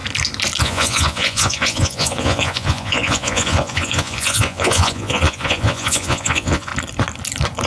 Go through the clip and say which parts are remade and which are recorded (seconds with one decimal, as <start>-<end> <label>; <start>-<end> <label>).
0.0-0.6 recorded; 0.6-6.7 remade; 6.7-7.7 recorded